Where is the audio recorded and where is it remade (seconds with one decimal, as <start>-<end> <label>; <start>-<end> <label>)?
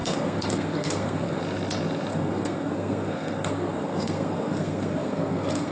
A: 0.0-1.4 remade; 1.4-2.1 recorded; 2.1-5.7 remade